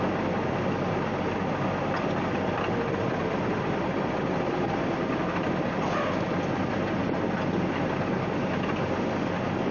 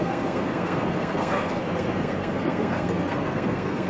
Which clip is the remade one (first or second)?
second